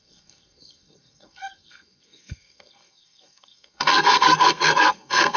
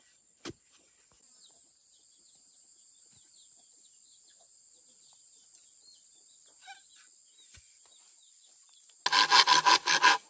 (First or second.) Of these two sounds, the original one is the second